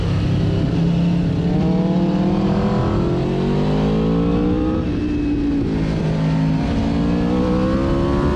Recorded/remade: recorded